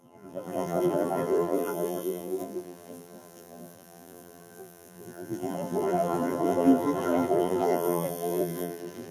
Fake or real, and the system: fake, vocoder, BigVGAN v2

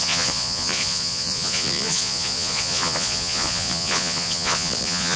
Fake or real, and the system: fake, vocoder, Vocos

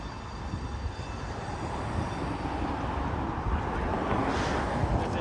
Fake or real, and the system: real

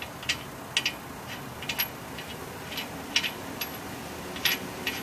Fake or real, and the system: real